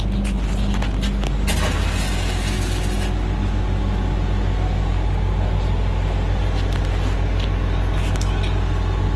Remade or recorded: recorded